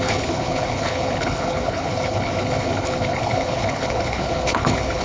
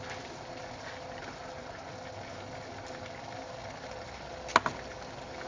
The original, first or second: second